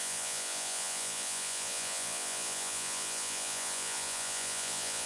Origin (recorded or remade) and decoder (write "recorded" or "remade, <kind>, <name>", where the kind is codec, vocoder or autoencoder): remade, vocoder, Vocos